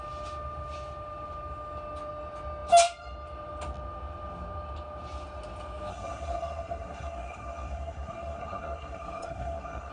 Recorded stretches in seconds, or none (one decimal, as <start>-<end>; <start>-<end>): 0.0-5.9